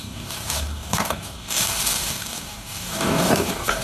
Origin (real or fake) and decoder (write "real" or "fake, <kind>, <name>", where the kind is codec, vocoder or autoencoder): fake, codec, DAC